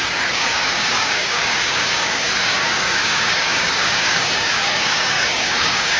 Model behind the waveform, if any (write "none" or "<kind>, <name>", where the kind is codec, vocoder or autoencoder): codec, DAC